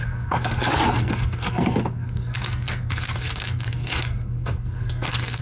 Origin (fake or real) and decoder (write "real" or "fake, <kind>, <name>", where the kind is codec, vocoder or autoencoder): fake, codec, SNAC